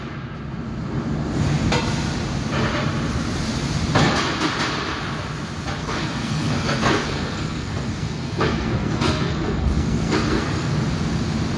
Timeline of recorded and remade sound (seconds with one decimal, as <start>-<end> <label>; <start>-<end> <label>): 0.0-5.8 recorded; 5.8-10.8 remade; 10.8-11.6 recorded